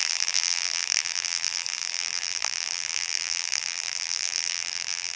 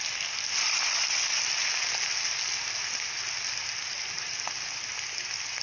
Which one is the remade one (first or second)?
first